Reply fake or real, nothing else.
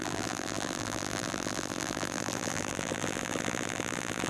fake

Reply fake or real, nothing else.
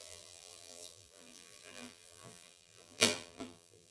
fake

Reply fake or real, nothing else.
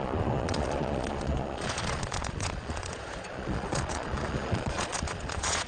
fake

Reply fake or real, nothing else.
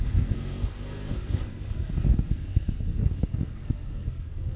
fake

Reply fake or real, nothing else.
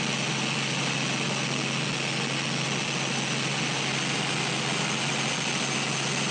real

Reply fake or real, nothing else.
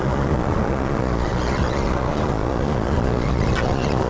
fake